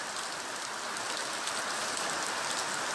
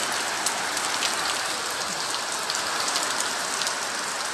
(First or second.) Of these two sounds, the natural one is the second